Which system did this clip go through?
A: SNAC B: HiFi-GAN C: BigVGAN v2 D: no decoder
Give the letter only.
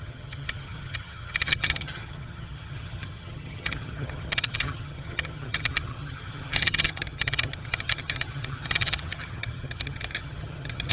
B